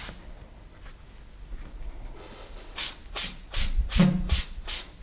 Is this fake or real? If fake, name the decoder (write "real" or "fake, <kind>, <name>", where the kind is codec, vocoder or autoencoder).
real